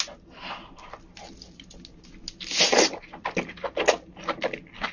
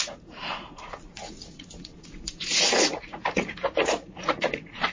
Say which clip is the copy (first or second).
second